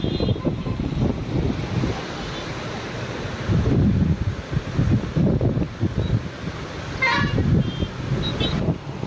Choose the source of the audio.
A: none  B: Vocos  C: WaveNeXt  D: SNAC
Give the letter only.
A